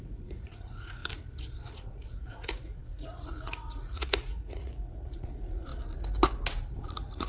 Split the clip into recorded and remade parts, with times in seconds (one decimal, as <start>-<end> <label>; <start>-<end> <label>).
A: 0.0-1.0 remade; 1.0-1.7 recorded; 1.7-5.7 remade; 5.7-6.8 recorded; 6.8-7.3 remade